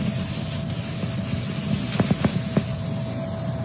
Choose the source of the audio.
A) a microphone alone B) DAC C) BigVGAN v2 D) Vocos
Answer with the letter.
A